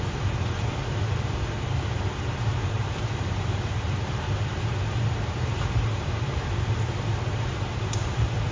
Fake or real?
fake